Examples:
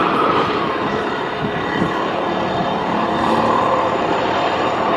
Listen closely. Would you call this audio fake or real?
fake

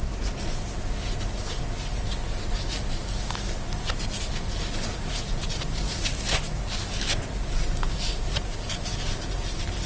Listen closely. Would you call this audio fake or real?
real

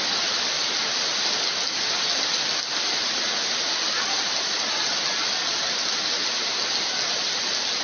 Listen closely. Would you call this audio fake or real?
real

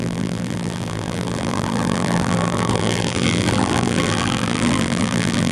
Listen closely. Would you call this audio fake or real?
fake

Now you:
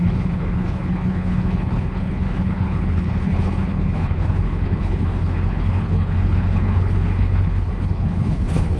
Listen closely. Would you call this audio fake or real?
fake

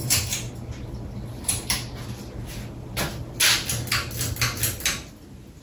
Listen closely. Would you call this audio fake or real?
real